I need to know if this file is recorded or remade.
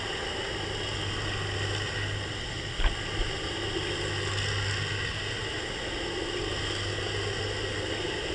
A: recorded